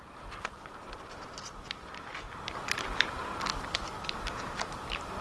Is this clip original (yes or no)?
yes